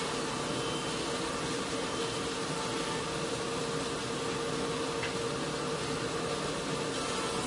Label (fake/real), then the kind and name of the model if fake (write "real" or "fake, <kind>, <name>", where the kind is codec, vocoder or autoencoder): real